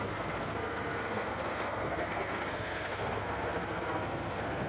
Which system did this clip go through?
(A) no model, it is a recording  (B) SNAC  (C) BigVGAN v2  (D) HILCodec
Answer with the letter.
B